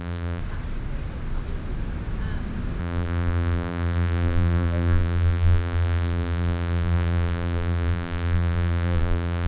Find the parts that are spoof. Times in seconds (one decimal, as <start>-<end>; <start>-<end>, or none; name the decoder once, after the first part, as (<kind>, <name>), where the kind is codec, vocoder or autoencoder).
0.0-0.4 (vocoder, BigVGAN v2); 2.8-9.5